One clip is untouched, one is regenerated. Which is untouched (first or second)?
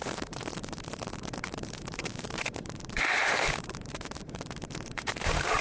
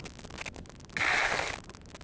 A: second